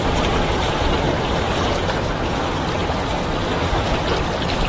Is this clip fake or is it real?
fake